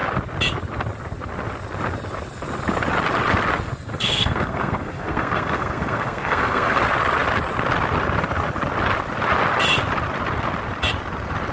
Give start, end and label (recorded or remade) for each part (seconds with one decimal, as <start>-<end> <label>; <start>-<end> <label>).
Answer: 0.0-3.9 recorded; 3.9-6.8 remade; 6.8-11.5 recorded